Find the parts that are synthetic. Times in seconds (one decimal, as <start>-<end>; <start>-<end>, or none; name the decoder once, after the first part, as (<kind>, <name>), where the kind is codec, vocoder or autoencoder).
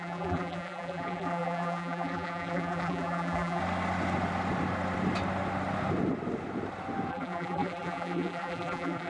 0.0-3.6 (vocoder, BigVGAN v2); 7.1-9.1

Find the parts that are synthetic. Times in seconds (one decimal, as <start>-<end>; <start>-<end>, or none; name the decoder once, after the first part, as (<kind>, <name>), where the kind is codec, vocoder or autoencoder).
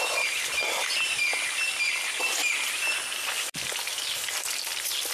none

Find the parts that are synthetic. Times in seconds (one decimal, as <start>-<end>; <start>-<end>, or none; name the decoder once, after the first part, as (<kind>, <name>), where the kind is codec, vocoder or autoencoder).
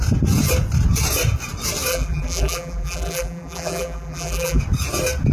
1.9-4.6 (vocoder, BigVGAN v2)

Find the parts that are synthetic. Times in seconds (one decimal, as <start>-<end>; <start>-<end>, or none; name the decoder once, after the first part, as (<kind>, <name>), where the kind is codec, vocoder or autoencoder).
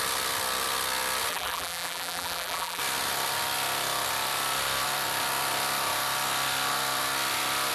1.3-2.8 (vocoder, BigVGAN v2)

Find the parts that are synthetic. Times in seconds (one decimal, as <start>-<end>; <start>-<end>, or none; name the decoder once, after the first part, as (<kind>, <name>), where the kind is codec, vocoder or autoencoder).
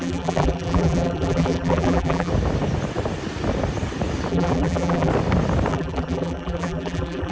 0.0-2.3 (vocoder, BigVGAN v2); 4.3-5.1; 5.7-7.3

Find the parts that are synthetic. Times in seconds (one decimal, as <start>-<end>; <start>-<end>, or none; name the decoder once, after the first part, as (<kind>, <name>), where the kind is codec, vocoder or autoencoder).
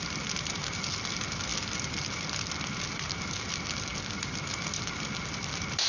none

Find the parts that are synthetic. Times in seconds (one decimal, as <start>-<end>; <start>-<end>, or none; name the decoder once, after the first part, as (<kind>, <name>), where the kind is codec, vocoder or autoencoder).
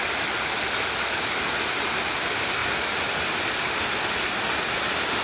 none